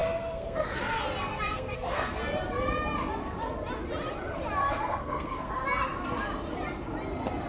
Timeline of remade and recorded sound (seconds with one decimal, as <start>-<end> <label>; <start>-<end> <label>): 0.0-0.8 remade; 0.8-1.3 recorded; 1.3-2.2 remade; 2.2-4.6 recorded; 4.6-5.5 remade; 5.5-7.5 recorded